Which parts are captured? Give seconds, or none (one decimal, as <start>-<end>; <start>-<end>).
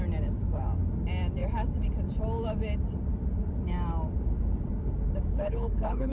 0.0-5.3